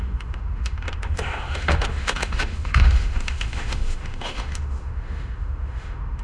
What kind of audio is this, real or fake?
fake